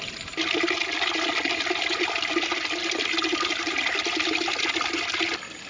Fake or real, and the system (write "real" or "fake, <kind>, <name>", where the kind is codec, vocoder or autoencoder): real